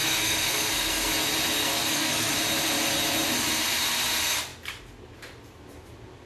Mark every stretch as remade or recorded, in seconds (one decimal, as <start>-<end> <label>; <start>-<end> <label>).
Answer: 0.0-1.1 remade; 1.1-1.6 recorded; 1.6-2.3 remade; 2.3-6.3 recorded